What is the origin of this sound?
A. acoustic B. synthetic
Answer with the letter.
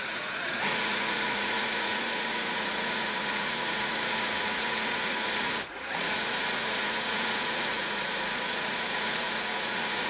B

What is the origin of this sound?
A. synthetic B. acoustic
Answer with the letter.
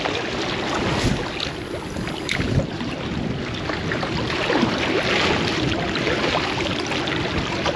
B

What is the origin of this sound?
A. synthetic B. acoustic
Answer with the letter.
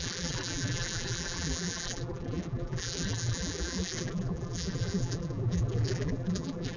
A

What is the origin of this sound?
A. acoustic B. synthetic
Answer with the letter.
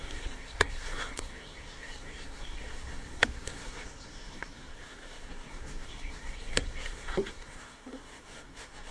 B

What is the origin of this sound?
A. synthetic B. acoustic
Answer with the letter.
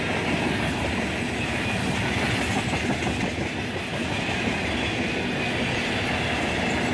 B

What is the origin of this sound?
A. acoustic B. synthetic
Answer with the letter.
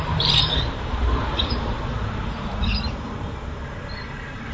B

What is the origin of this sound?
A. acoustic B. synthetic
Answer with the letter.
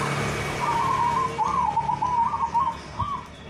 A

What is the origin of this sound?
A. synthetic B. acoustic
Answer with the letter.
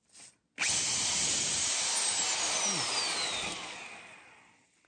B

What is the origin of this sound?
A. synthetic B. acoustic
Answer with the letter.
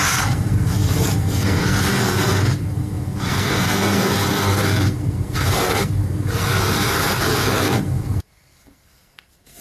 A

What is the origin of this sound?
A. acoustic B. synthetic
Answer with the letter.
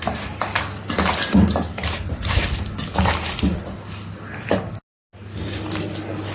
A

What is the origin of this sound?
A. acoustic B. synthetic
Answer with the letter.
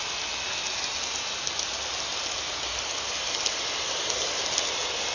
A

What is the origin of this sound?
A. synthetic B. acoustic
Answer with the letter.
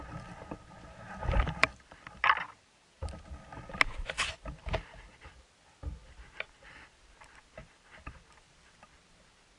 B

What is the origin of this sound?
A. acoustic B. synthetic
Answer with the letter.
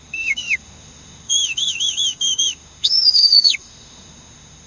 B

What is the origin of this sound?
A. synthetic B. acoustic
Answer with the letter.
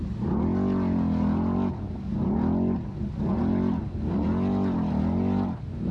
B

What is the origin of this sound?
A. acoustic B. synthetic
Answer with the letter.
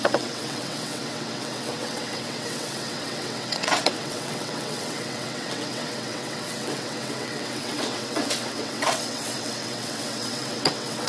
B